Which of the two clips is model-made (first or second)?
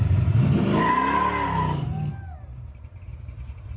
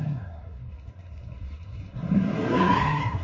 second